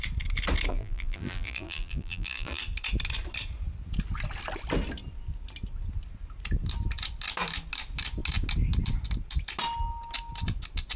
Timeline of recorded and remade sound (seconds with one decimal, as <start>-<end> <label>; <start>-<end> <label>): 0.0-0.7 recorded; 0.7-2.6 remade; 2.6-11.0 recorded